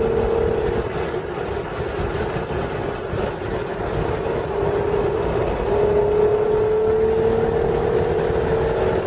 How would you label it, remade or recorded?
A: recorded